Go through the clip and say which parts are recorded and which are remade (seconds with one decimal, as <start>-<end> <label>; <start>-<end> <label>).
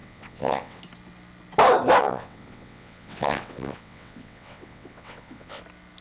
0.0-0.8 remade; 0.8-2.0 recorded; 2.0-5.6 remade; 5.6-6.0 recorded